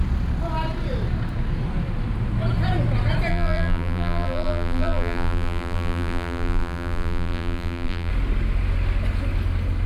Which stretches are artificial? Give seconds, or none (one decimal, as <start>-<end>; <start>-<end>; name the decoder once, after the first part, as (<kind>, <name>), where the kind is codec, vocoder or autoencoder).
3.3-8.1 (vocoder, BigVGAN v2)